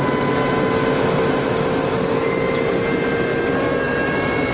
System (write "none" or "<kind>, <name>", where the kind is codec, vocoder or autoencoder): none